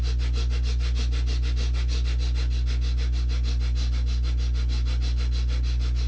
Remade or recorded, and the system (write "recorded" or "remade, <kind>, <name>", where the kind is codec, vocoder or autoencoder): recorded